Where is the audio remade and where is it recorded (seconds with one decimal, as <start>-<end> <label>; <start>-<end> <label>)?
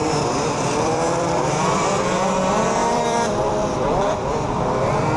0.0-2.1 remade; 2.1-2.8 recorded; 2.8-5.2 remade